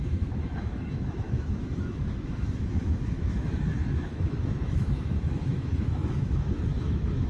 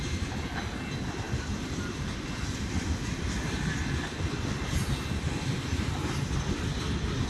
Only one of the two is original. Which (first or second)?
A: second